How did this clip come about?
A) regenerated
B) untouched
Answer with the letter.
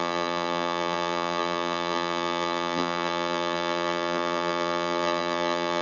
A